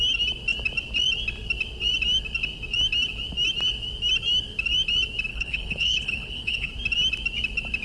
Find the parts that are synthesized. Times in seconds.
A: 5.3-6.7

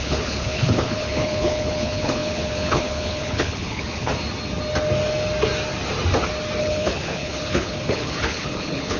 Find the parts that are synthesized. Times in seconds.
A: 0.0-4.1; 6.6-9.0